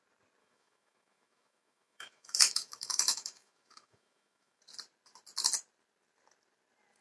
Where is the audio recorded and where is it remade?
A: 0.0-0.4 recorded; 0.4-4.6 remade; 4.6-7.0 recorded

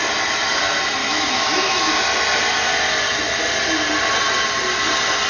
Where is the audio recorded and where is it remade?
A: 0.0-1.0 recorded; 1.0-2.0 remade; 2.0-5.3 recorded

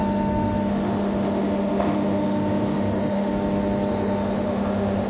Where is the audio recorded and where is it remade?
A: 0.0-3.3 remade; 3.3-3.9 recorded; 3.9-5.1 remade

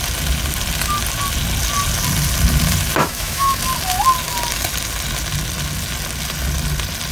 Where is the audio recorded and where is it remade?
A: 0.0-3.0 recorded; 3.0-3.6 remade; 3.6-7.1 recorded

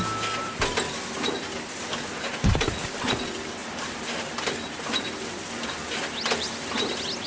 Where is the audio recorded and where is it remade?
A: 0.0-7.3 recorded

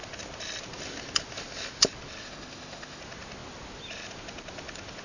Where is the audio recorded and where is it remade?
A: 0.0-2.2 recorded; 2.2-3.0 remade; 3.0-5.0 recorded

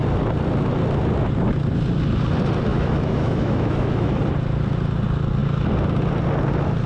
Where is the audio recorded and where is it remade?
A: 0.0-2.7 recorded; 2.7-4.2 remade; 4.2-6.9 recorded

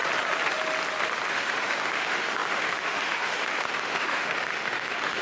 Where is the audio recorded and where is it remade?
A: 0.0-1.3 recorded; 1.3-5.2 remade